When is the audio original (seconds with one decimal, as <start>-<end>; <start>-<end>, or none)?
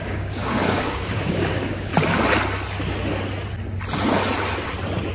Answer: 1.9-5.1